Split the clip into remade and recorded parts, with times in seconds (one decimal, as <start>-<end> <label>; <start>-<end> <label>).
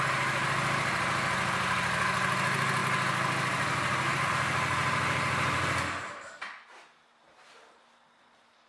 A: 0.0-8.7 recorded